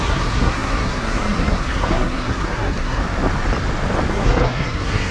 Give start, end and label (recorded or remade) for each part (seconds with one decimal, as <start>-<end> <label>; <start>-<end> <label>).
0.0-3.0 remade; 3.0-4.1 recorded; 4.1-5.1 remade